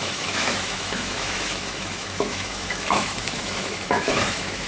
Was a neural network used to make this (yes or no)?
yes